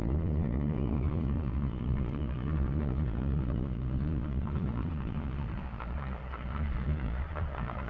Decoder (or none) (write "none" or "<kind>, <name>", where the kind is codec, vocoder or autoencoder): vocoder, Vocos